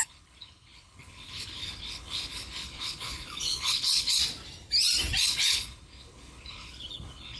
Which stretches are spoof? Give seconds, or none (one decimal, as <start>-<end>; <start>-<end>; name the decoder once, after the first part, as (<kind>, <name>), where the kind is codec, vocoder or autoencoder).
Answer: 0.0-4.2 (codec, HILCodec); 5.2-7.4

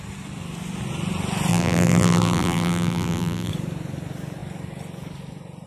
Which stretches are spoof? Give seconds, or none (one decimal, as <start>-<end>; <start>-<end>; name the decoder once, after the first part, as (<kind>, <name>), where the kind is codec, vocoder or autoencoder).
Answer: 1.5-3.5 (vocoder, BigVGAN v2)

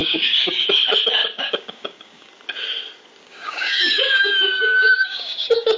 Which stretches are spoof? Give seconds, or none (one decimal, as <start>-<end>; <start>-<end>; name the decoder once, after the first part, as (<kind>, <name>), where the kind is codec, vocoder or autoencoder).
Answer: 0.0-0.7 (codec, DAC); 1.2-2.3; 3.2-5.8

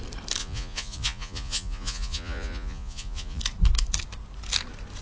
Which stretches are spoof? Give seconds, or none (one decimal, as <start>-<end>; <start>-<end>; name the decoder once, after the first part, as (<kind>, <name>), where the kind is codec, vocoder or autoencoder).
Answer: 0.4-3.4 (vocoder, Vocos)

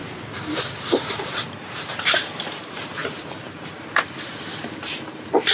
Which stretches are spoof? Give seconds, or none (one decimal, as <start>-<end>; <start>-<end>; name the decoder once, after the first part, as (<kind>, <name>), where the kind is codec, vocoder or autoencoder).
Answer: 0.8-5.5 (vocoder, BigVGAN v2)

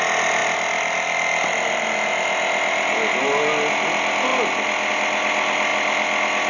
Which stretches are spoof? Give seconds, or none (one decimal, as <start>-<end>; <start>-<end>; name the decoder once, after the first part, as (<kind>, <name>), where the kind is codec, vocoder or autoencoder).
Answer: none

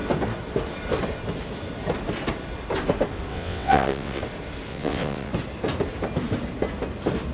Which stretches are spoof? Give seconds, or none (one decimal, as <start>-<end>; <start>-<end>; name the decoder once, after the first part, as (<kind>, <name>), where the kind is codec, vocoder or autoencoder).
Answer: 3.3-4.2 (vocoder, WaveNeXt); 4.7-5.3